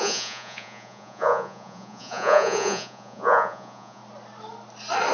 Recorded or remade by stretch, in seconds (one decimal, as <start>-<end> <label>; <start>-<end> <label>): 0.0-4.0 remade; 4.0-5.1 recorded